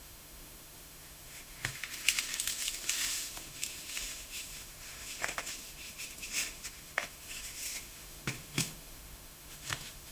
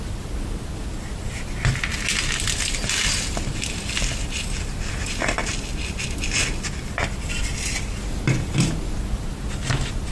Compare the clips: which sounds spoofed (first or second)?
first